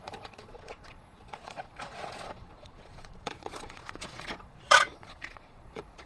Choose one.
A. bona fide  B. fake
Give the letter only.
B